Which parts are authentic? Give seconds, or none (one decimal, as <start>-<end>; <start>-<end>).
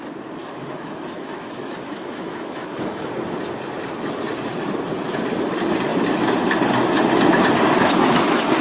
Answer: 0.0-0.4; 3.1-8.6